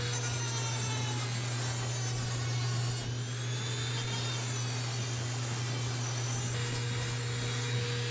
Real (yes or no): yes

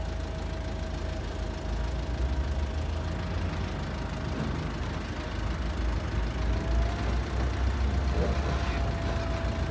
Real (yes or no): yes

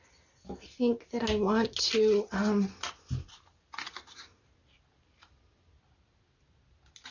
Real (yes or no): yes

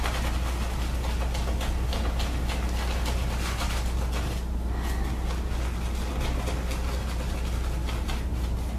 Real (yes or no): yes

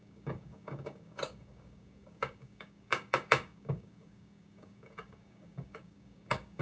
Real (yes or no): no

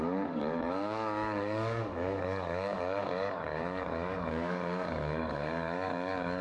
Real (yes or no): no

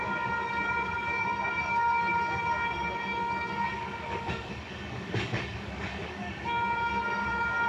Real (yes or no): no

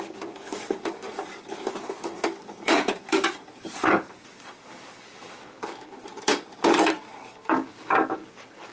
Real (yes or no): no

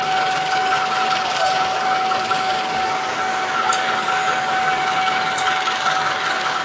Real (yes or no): no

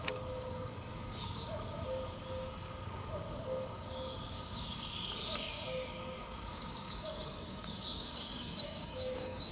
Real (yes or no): no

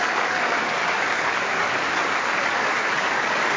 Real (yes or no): no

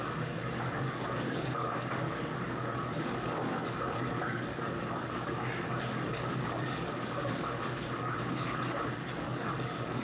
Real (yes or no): no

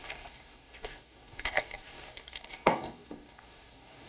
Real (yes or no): no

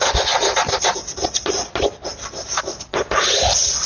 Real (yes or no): yes